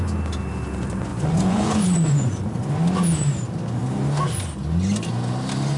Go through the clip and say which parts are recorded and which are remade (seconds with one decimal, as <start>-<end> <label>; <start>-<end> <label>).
0.0-1.1 recorded; 1.1-2.4 remade; 2.4-5.8 recorded